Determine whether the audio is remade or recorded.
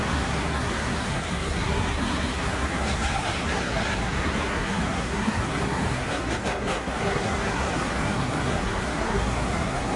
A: remade